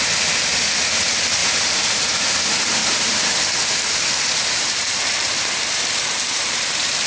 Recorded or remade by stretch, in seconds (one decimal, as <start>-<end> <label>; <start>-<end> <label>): 0.0-1.4 recorded; 1.4-2.3 remade; 2.3-2.8 recorded; 2.8-7.1 remade